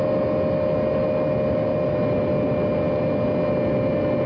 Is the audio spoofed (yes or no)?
no